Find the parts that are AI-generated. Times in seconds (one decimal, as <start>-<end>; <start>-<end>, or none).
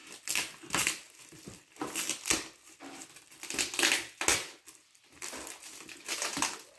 none